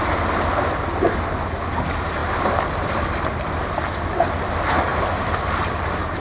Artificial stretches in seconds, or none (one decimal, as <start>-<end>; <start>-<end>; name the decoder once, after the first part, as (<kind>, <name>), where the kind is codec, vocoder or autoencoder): 4.9-6.2 (vocoder, BigVGAN v2)